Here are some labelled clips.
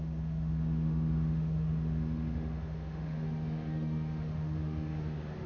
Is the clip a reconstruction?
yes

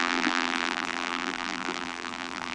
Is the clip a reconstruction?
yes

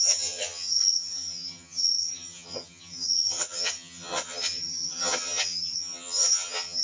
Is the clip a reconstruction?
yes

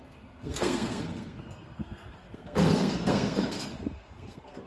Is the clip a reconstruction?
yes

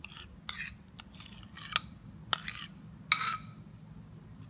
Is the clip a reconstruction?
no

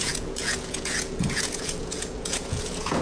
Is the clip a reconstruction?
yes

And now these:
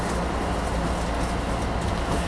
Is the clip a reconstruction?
no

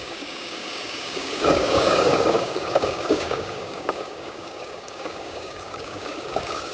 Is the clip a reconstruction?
yes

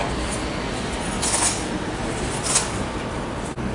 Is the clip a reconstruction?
no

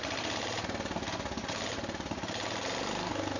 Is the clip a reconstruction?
no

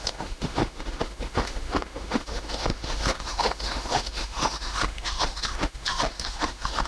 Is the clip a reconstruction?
yes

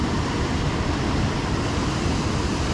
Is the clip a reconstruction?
no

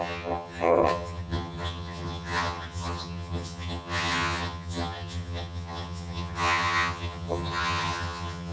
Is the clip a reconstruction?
yes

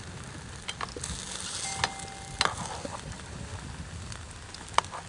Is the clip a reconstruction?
no